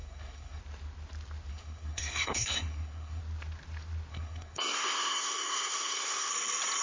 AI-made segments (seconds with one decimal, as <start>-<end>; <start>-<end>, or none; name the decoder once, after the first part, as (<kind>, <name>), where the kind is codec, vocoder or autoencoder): 0.0-0.6 (codec, SNAC); 1.5-3.2; 4.1-6.3